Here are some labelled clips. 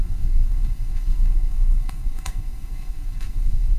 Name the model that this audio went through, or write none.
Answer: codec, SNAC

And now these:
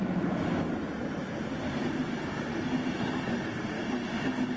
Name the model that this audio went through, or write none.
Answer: none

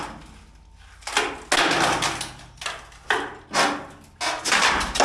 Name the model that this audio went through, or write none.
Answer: none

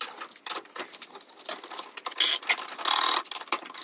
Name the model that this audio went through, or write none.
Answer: none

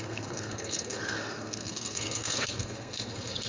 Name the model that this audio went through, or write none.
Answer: codec, SNAC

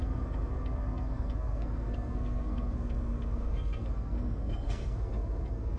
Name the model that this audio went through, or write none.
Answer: codec, SNAC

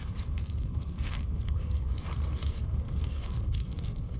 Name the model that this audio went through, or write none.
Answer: codec, SNAC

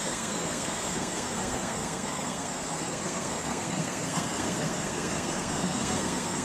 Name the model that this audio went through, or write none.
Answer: codec, SNAC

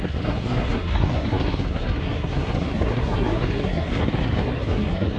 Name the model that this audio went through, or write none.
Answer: codec, SNAC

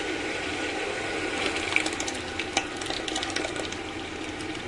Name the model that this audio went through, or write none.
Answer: none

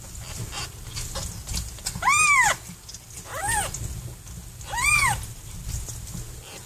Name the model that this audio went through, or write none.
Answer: none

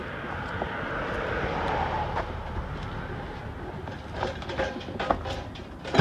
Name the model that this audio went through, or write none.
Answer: none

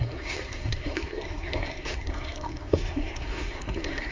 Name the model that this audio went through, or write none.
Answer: codec, SNAC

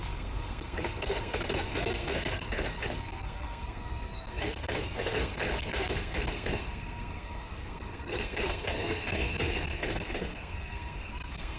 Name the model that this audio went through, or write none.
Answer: codec, SNAC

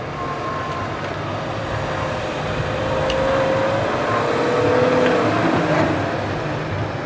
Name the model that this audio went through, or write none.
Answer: none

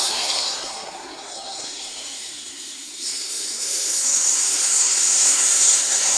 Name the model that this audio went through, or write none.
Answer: codec, SNAC